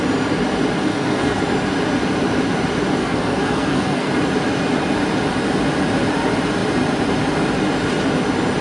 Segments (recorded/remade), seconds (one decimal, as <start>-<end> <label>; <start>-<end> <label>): 0.0-0.9 recorded; 0.9-1.4 remade; 1.4-3.0 recorded; 3.0-4.1 remade; 4.1-8.6 recorded